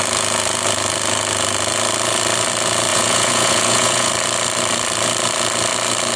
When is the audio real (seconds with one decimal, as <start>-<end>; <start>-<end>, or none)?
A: 0.0-2.9; 4.1-6.2